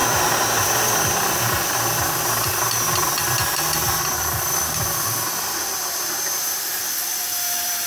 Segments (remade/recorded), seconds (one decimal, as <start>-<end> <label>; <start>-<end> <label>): 0.0-0.6 recorded; 0.6-7.9 remade